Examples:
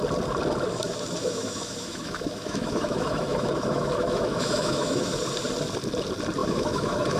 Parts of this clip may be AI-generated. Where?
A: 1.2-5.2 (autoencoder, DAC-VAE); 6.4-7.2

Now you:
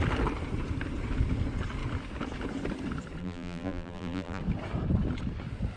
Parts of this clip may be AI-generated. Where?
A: 3.2-4.4 (vocoder, BigVGAN v2)

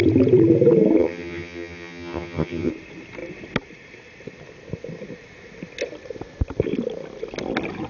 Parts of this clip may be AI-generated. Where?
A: 1.0-2.7 (vocoder, HiFi-GAN)

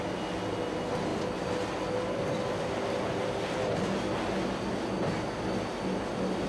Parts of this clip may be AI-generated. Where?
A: none